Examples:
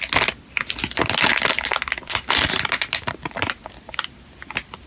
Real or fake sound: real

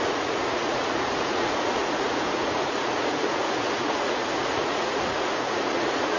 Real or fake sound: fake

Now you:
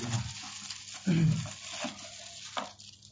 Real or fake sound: real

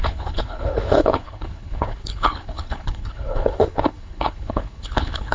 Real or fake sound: fake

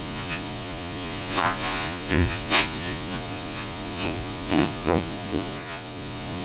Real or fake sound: fake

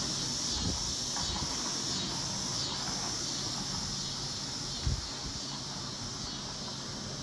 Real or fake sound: real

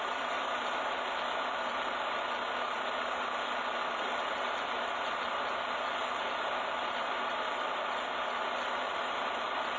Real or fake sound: fake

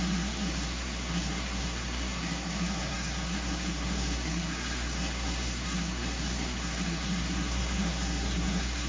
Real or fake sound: fake